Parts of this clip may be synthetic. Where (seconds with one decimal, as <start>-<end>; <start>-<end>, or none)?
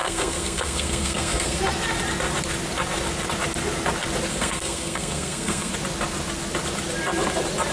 0.0-1.6; 4.3-5.7